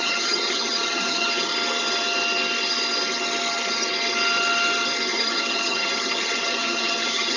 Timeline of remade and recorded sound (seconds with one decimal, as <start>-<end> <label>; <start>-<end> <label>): 0.0-1.5 remade; 1.5-5.1 recorded; 5.1-7.4 remade

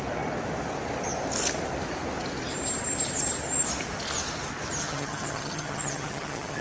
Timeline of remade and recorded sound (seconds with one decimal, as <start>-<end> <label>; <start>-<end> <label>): 0.0-4.8 recorded; 4.8-6.6 remade

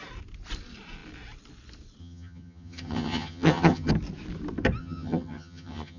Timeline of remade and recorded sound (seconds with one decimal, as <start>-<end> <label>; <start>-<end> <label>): 0.0-2.0 recorded; 2.0-3.9 remade; 3.9-4.8 recorded; 4.8-6.0 remade